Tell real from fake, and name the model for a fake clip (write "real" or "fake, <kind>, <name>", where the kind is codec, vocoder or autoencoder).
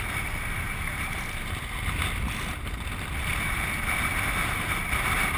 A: real